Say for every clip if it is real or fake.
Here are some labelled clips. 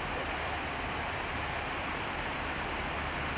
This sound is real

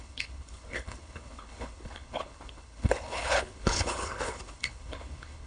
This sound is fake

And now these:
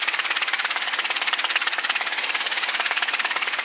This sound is fake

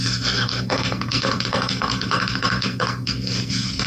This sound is fake